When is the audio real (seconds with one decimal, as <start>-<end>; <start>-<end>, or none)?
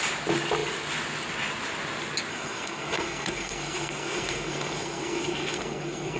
0.0-2.3